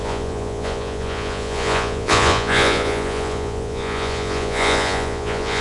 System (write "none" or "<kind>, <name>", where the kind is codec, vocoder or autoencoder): vocoder, Vocos